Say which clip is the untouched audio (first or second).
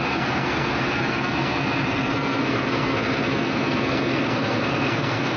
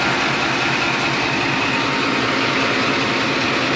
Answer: second